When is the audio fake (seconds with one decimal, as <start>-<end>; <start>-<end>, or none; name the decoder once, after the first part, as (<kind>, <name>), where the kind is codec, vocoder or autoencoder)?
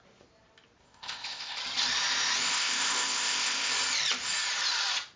0.8-1.6 (codec, ZipCodec); 2.5-3.7